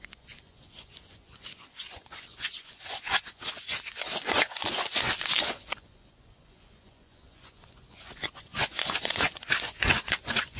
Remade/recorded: remade